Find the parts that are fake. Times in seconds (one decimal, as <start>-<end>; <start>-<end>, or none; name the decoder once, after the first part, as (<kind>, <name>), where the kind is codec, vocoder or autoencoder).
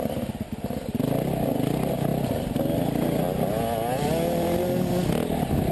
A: none